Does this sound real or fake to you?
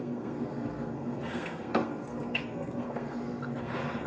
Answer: fake